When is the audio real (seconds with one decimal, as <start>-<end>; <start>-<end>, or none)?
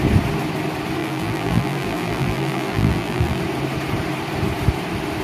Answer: 0.0-1.0; 3.4-5.2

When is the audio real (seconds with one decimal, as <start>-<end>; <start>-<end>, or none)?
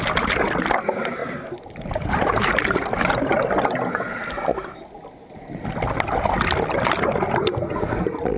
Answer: 0.0-1.2; 2.5-8.4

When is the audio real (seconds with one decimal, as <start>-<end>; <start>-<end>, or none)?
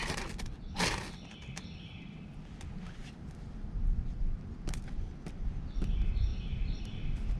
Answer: 0.0-6.3; 6.8-7.4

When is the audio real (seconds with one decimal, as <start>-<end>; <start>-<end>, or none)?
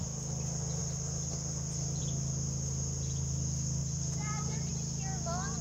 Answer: 0.0-3.8; 4.7-5.6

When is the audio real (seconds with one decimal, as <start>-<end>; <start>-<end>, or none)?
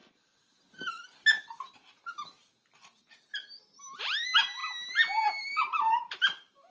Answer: 0.0-4.0; 4.6-5.3